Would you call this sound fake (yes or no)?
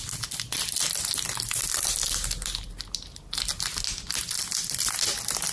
no